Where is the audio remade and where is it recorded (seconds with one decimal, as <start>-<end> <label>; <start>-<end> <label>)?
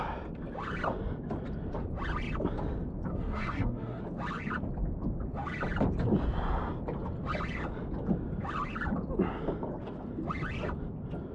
0.0-3.1 recorded; 3.1-4.0 remade; 4.0-11.3 recorded